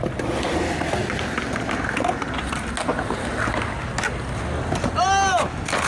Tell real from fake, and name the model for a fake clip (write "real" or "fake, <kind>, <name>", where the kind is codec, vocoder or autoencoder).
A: real